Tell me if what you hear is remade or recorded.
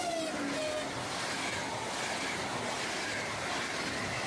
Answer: recorded